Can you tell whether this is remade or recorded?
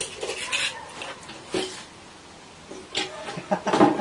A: recorded